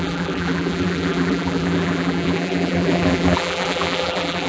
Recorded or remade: remade